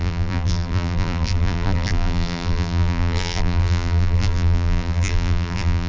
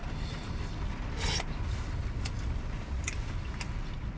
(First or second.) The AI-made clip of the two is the first